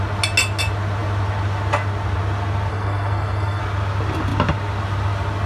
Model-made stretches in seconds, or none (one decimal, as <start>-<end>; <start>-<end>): 2.7-3.6